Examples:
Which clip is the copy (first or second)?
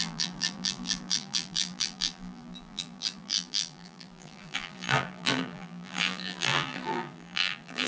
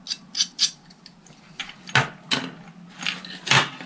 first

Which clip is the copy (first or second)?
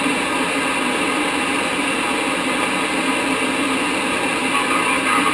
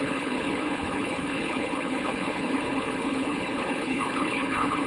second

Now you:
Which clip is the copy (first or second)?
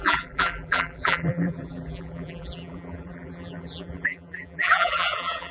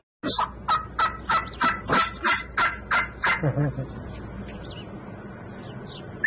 first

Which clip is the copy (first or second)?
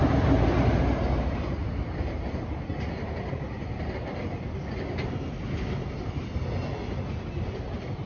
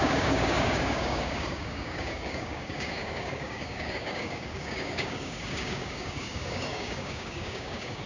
second